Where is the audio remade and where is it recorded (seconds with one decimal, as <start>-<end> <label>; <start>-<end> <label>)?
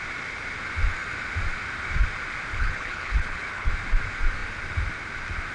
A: 0.0-2.5 recorded; 2.5-3.7 remade; 3.7-5.5 recorded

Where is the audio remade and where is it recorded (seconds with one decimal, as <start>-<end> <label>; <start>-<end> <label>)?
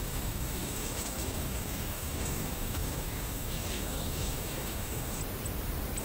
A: 0.0-5.2 remade; 5.2-6.0 recorded